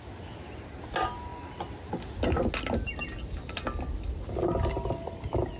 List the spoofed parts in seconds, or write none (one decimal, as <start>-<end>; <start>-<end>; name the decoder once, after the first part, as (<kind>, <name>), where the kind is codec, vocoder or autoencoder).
none